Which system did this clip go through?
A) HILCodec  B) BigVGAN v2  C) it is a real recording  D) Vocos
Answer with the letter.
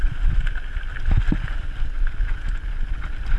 C